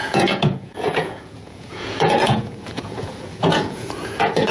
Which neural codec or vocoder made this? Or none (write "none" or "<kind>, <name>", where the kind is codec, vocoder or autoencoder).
vocoder, Vocos